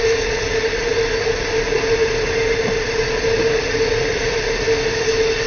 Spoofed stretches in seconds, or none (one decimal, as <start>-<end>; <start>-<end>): none